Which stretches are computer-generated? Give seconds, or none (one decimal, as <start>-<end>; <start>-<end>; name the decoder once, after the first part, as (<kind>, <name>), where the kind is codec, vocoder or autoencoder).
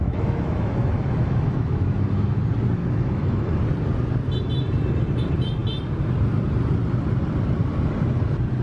0.0-2.4 (autoencoder, DAC-VAE); 2.8-3.6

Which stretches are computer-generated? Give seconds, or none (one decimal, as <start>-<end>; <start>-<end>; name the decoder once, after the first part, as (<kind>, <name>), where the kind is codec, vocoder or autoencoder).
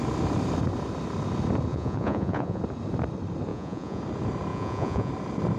1.7-2.6 (vocoder, Vocos); 3.5-4.0; 4.5-5.1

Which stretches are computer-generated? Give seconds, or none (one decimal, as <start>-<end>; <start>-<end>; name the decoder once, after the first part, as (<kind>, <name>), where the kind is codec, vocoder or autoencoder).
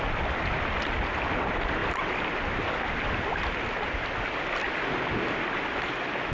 none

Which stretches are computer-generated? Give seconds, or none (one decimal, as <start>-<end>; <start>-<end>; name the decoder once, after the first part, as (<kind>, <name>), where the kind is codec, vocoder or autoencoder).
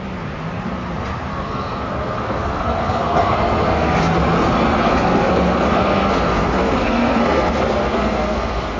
1.3-4.0 (codec, SNAC); 4.8-8.8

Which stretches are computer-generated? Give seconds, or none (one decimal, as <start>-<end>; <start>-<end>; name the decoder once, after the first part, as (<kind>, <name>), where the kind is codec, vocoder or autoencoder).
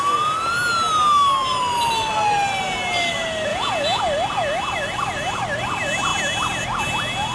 3.5-4.0 (vocoder, Vocos)